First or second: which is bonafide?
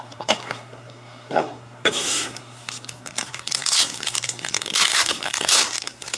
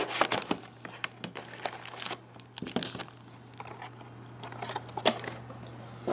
second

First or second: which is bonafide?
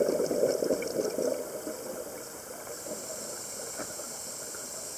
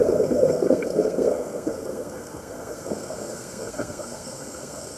first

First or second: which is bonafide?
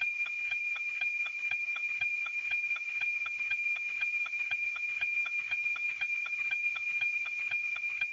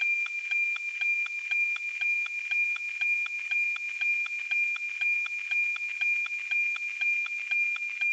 second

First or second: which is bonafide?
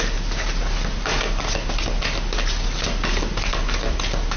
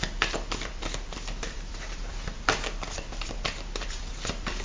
first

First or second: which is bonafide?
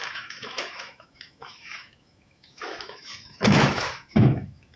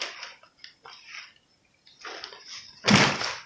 second